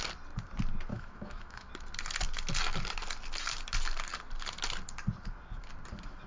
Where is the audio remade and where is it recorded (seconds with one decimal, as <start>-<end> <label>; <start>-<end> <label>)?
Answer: 0.0-0.9 recorded; 0.9-1.7 remade; 1.7-6.3 recorded